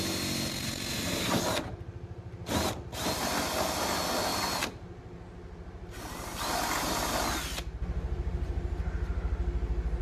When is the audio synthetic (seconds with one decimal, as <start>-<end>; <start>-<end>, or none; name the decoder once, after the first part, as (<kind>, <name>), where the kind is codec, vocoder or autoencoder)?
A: none